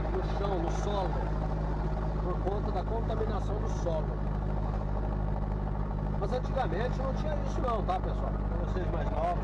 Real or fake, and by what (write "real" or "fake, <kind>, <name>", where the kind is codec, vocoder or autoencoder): real